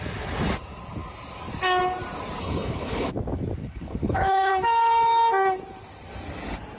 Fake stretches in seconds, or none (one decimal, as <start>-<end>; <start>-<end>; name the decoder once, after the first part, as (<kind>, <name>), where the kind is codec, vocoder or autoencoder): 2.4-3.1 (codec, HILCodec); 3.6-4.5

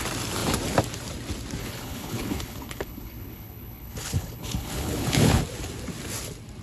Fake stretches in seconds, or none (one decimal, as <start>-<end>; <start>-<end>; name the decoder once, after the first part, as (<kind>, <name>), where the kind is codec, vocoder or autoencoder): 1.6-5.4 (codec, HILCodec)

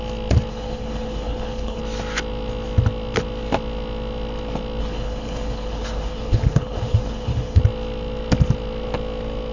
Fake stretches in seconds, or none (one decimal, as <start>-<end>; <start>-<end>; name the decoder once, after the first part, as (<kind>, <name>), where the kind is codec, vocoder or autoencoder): 0.5-1.8 (codec, HILCodec); 4.8-7.6